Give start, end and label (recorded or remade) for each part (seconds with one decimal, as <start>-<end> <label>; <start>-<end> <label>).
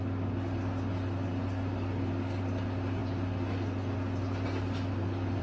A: 0.0-5.4 recorded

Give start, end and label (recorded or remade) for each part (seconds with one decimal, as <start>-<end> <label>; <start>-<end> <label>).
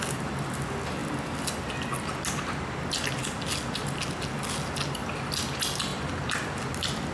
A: 0.0-7.1 recorded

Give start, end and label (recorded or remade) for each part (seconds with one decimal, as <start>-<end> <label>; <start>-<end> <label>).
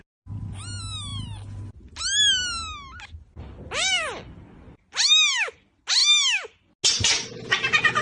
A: 0.0-8.0 recorded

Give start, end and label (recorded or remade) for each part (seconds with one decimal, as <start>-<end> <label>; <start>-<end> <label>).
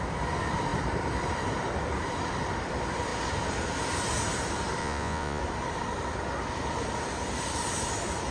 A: 0.0-4.8 recorded; 4.8-5.4 remade; 5.4-8.3 recorded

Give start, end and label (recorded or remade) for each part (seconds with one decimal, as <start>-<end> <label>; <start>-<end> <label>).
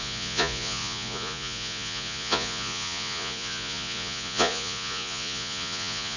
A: 0.0-6.2 remade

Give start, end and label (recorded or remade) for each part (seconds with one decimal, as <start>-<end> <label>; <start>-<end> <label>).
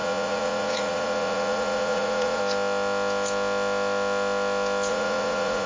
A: 0.0-2.4 remade; 2.4-4.9 recorded; 4.9-5.7 remade